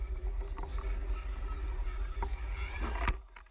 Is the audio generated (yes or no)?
no